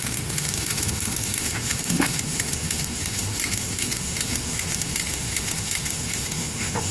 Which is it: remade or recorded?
remade